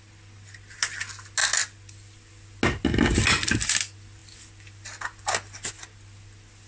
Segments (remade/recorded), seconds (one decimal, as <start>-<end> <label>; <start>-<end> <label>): 0.0-6.7 recorded